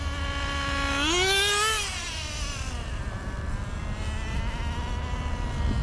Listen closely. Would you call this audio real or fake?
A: real